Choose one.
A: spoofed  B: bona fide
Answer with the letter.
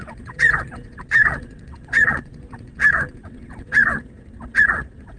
A